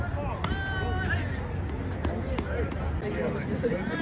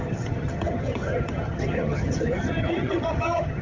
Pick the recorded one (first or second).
first